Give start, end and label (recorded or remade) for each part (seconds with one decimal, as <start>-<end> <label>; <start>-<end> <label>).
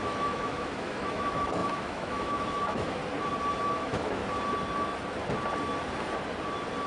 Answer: 0.0-3.0 remade; 3.0-3.6 recorded; 3.6-4.2 remade; 4.2-6.9 recorded